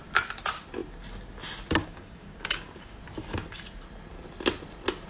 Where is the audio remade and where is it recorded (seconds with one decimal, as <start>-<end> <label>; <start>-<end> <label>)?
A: 0.0-1.8 recorded; 1.8-3.0 remade; 3.0-5.1 recorded